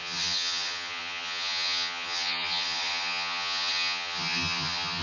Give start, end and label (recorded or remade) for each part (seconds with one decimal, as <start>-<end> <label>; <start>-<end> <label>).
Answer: 0.0-5.0 remade